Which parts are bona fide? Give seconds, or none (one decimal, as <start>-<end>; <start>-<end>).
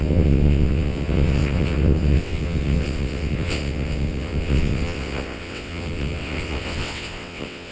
none